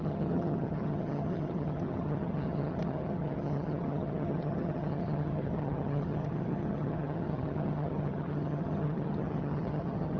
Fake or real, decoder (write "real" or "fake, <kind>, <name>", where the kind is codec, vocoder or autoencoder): fake, vocoder, HiFi-GAN